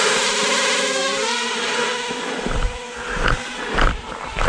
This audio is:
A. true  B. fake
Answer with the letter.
A